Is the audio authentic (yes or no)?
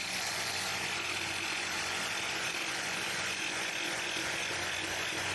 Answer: no